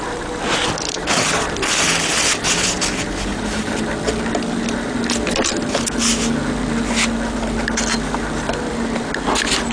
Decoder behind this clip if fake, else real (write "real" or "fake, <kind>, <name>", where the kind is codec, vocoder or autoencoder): real